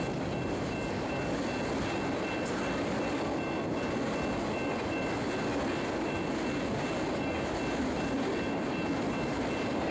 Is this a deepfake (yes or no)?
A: no